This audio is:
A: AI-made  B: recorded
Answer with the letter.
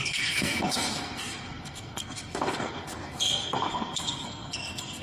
A